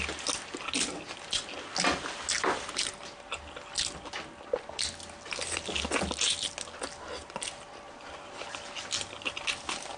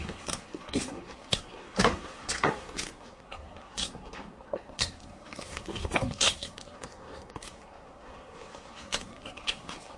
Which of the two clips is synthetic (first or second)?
second